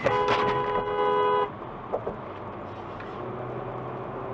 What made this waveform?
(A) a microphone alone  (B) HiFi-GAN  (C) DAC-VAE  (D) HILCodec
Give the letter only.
A